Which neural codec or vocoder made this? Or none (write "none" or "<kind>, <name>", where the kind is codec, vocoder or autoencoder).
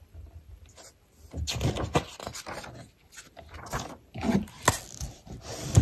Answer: none